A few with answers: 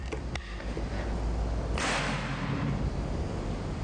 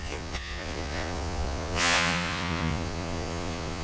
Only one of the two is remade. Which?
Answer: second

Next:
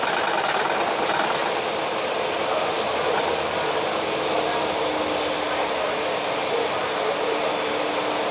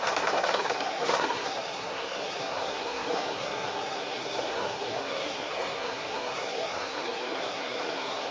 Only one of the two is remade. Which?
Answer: second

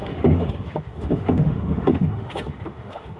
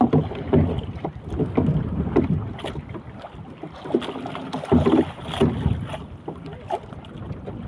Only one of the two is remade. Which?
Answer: first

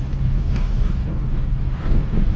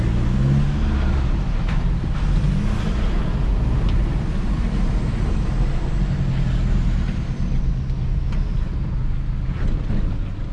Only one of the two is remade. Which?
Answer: first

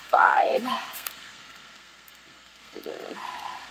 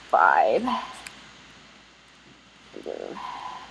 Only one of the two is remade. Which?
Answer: first